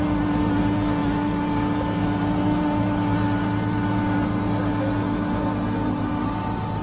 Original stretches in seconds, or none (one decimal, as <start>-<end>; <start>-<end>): 0.0-6.8